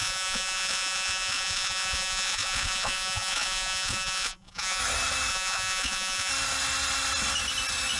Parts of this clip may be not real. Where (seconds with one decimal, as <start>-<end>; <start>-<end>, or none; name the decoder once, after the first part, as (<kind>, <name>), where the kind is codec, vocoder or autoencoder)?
0.0-4.8 (vocoder, Vocos); 5.3-6.3